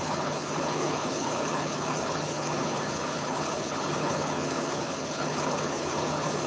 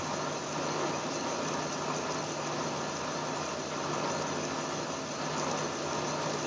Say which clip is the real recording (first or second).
second